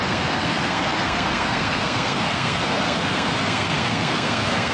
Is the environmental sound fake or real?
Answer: fake